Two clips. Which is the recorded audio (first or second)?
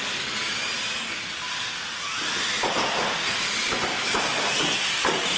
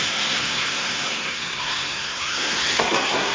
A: first